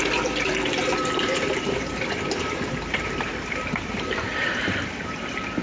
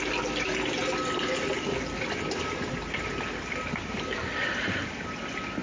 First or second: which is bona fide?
second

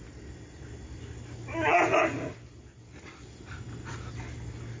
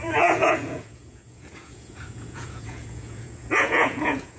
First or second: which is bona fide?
first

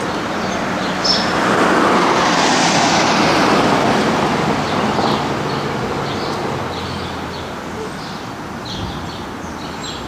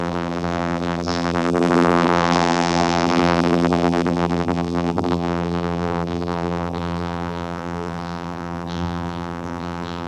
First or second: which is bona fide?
first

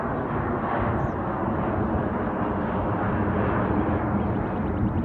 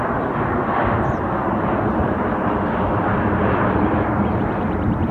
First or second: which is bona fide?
first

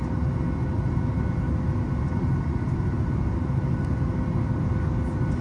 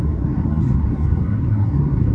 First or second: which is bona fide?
first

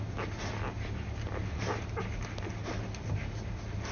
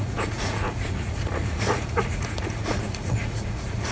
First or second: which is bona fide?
first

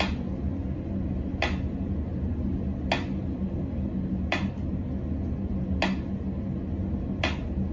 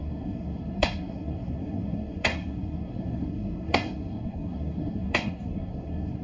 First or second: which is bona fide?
first